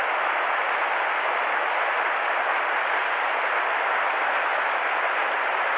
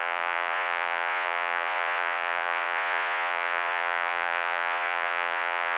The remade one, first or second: second